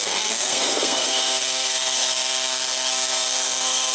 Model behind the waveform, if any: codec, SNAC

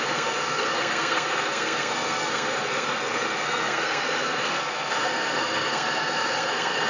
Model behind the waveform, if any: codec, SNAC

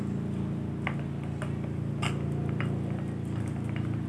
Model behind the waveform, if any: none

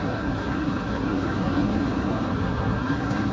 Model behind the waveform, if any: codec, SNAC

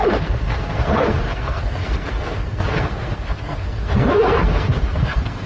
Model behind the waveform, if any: codec, SNAC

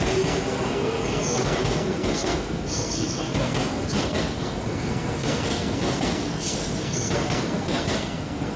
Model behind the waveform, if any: codec, SNAC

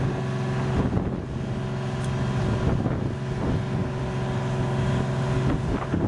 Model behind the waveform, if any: none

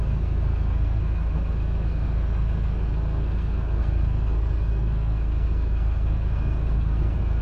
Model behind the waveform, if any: codec, SNAC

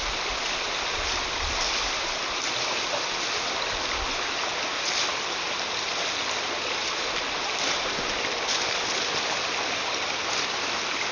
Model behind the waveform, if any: none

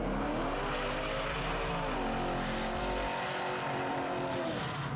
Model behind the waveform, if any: none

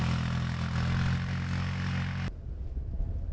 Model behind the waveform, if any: none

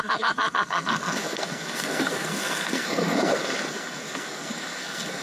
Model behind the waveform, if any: codec, SNAC